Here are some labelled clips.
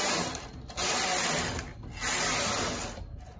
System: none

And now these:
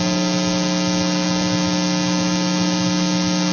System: none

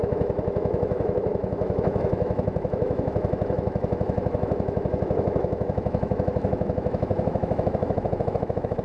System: autoencoder, DAC-VAE